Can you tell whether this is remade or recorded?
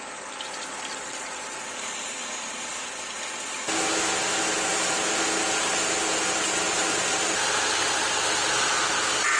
recorded